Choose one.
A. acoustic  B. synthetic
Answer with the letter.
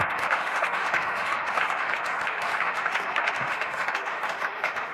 B